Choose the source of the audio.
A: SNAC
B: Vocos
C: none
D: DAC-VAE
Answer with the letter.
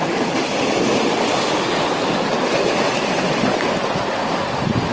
C